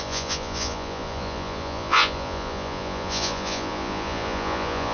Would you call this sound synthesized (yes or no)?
yes